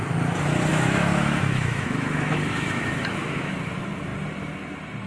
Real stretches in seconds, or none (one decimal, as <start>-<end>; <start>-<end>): 0.0-0.7; 3.5-5.1